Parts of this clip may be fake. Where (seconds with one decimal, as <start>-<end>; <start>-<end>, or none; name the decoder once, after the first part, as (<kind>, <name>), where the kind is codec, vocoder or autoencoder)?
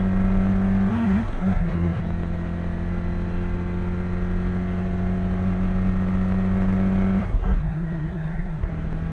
0.9-2.0 (codec, SNAC); 7.2-8.7